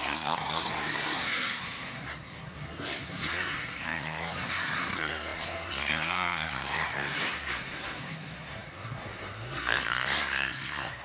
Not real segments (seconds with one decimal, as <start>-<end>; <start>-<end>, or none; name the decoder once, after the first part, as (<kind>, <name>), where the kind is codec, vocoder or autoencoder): 0.0-11.0 (codec, SNAC)